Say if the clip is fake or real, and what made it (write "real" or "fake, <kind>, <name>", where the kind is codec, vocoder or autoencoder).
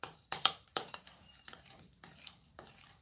fake, vocoder, BigVGAN v2